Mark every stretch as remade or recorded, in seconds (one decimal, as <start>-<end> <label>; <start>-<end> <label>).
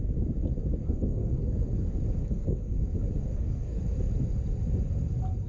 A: 0.0-0.8 recorded; 0.8-1.7 remade; 1.7-2.2 recorded; 2.2-2.8 remade; 2.8-3.3 recorded; 3.3-3.8 remade; 3.8-5.5 recorded